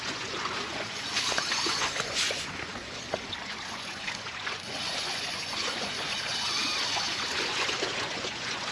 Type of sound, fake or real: fake